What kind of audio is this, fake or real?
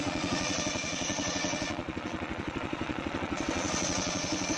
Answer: fake